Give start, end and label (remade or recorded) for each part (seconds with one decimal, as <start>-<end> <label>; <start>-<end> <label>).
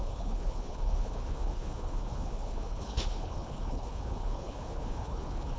0.0-5.6 remade